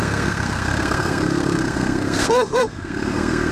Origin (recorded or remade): remade